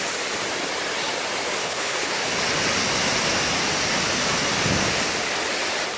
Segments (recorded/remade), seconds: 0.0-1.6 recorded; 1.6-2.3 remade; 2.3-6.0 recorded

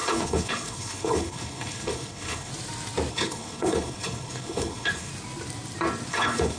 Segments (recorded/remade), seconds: 0.0-2.5 remade; 2.5-3.1 recorded; 3.1-5.1 remade; 5.1-6.1 recorded; 6.1-6.6 remade